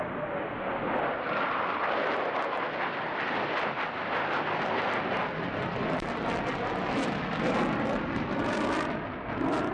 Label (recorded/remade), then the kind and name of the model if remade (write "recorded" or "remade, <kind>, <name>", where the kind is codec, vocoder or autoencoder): recorded